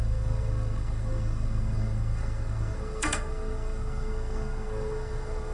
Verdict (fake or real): fake